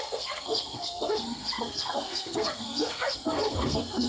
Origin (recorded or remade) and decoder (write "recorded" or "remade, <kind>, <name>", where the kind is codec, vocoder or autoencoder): remade, codec, SNAC